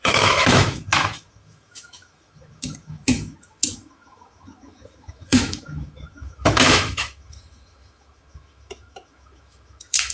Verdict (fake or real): fake